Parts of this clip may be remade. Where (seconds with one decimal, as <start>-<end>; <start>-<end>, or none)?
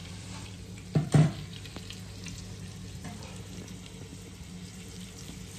0.0-1.7; 2.2-3.0; 4.1-5.6